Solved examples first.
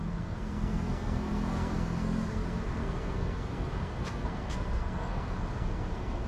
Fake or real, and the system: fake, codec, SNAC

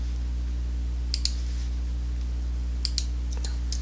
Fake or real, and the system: real